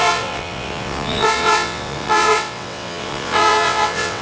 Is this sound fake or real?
fake